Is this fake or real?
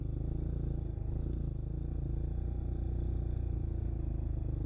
real